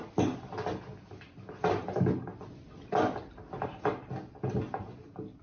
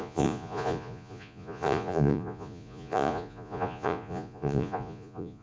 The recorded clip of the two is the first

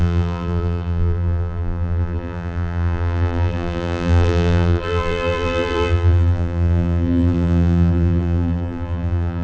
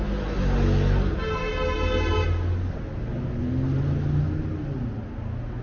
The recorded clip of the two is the second